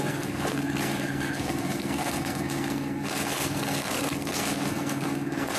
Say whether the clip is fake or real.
fake